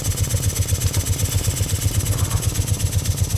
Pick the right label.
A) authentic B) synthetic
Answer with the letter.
A